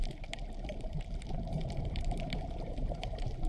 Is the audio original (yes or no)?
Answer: no